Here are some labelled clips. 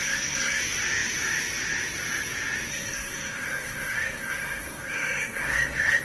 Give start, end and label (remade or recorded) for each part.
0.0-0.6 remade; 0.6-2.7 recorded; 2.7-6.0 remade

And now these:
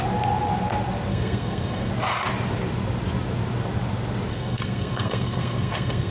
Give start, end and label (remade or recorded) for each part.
0.0-1.1 recorded; 1.1-1.9 remade; 1.9-4.3 recorded; 4.3-6.1 remade

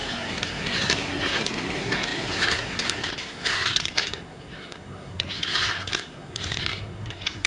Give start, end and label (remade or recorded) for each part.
0.0-7.5 remade

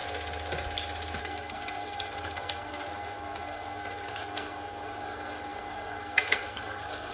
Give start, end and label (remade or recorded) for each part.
0.0-1.2 recorded; 1.2-7.1 remade